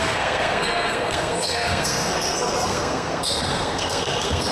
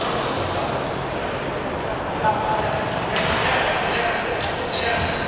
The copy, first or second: first